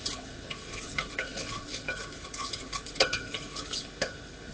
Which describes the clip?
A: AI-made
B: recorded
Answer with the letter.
A